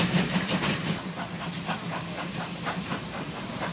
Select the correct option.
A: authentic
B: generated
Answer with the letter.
B